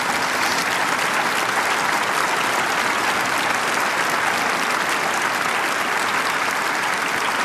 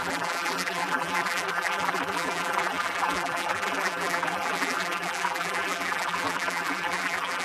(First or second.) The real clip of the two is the first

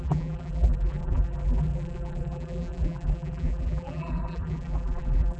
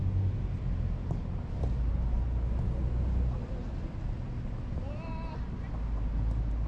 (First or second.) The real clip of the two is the second